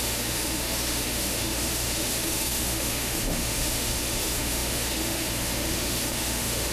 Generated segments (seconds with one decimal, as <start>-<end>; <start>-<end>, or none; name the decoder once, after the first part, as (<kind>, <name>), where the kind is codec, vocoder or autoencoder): 0.0-6.7 (autoencoder, DAC-VAE)